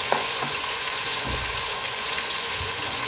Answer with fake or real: fake